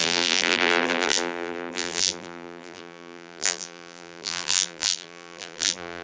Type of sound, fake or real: fake